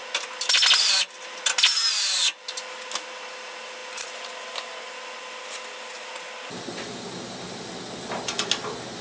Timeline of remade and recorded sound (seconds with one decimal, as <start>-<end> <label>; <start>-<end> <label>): 0.0-9.0 recorded